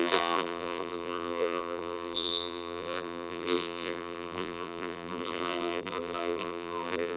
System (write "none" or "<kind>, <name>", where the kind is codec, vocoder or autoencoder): vocoder, BigVGAN v2